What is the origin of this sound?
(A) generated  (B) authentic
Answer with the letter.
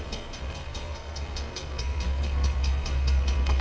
A